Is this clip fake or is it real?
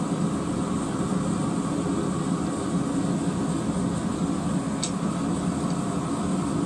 real